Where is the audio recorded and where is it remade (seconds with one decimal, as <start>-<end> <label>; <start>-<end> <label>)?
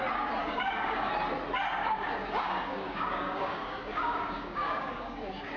0.0-0.4 recorded; 0.4-1.1 remade; 1.1-1.8 recorded; 1.8-5.6 remade